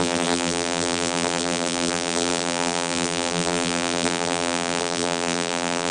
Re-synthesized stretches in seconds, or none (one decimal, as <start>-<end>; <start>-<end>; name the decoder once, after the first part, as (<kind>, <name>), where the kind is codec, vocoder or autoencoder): 0.0-5.9 (vocoder, BigVGAN v2)